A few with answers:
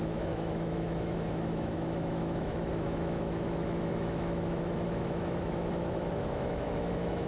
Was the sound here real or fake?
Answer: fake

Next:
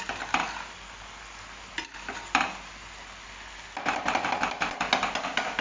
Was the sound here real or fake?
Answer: real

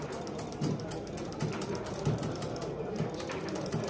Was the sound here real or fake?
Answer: real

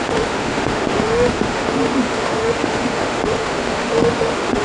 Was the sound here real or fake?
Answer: fake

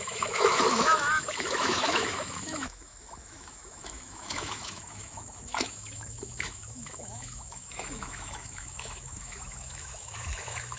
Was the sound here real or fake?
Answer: fake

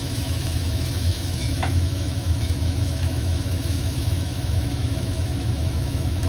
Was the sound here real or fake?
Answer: fake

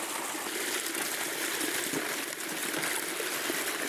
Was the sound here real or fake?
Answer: real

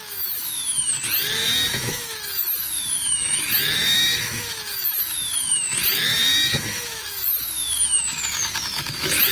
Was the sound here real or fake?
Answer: fake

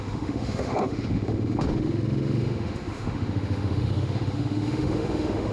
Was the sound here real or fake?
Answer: fake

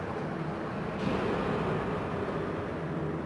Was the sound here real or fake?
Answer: real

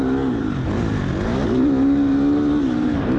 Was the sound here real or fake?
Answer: real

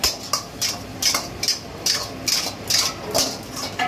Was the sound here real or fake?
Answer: real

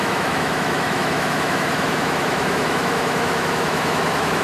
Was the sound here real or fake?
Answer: fake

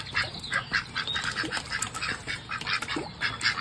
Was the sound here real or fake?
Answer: real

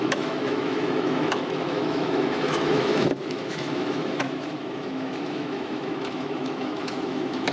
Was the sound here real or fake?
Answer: fake